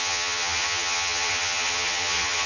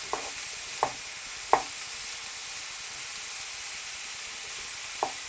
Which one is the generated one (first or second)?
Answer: first